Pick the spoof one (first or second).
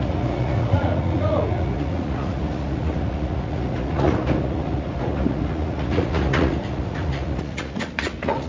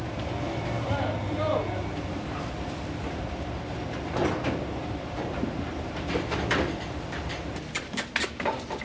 first